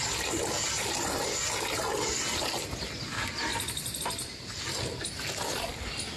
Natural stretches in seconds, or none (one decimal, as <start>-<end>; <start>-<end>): 0.0-6.2